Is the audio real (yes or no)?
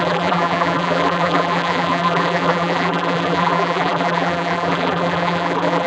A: no